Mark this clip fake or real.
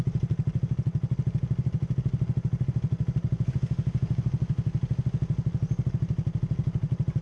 real